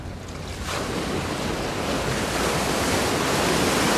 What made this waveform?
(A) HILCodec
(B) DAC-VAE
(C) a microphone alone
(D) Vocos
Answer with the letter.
C